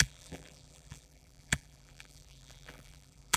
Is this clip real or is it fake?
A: fake